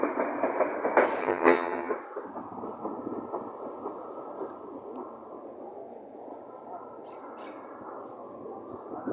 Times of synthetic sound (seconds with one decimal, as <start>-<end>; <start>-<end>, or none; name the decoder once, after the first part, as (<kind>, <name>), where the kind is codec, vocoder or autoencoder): 1.2-1.9 (vocoder, HiFi-GAN)